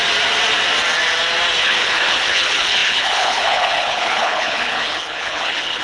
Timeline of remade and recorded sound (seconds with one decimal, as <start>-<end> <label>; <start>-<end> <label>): 0.0-1.6 recorded; 1.6-5.8 remade